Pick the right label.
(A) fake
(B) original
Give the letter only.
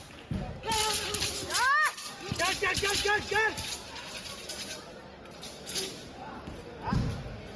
B